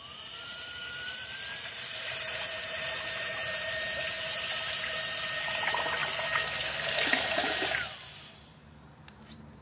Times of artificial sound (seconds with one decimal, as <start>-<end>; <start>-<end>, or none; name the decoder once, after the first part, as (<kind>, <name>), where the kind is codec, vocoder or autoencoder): 0.0-6.0 (vocoder, BigVGAN v2); 8.1-9.6